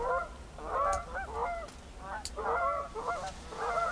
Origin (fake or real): real